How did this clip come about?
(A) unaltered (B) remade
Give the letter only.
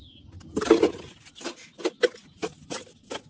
A